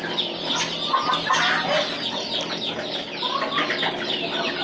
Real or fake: real